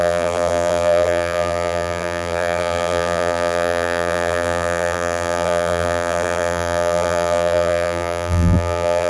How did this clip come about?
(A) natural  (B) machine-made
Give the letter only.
B